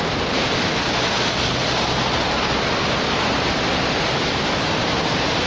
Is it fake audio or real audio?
real